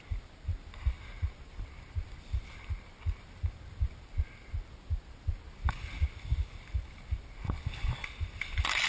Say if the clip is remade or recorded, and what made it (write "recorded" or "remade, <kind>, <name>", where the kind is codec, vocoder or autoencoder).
recorded